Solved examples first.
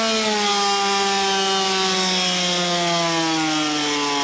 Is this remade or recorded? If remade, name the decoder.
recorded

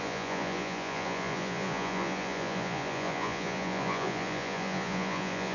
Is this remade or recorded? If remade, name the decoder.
remade, vocoder, Vocos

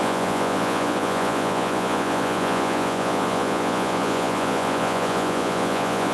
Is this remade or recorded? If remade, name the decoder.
remade, vocoder, Vocos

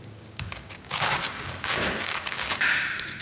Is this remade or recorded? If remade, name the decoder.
remade, codec, DAC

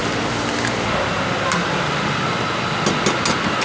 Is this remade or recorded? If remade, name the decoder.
recorded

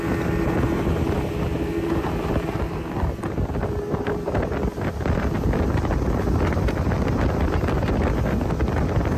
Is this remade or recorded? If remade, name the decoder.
recorded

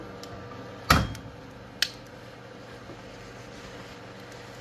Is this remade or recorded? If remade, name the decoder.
recorded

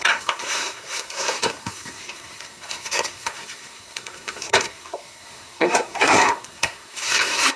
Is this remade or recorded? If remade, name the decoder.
remade, codec, SNAC